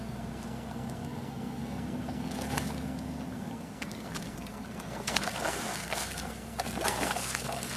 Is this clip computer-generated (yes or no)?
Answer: yes